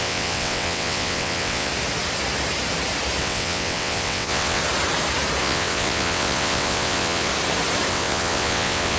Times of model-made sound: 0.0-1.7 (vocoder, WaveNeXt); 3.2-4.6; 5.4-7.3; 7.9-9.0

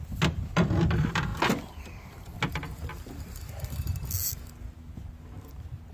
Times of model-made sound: none

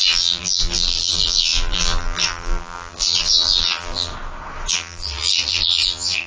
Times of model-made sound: 0.0-4.1 (vocoder, BigVGAN v2); 4.7-6.3

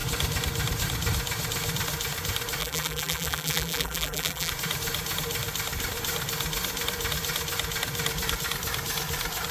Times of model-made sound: 2.6-4.5 (vocoder, BigVGAN v2)

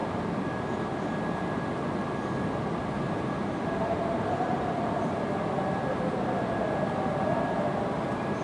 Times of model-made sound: 2.2-4.9 (vocoder, BigVGAN v2)

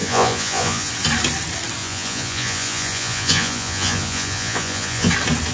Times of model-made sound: 0.0-0.9 (vocoder, Vocos); 1.8-5.1

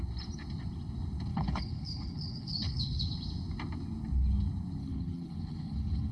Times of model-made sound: 1.3-3.1 (codec, HILCodec); 4.8-6.1

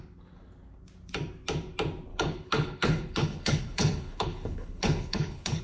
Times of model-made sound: 2.1-5.6 (codec, HILCodec)